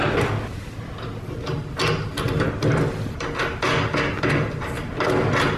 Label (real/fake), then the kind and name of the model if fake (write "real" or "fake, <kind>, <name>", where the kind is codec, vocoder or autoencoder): real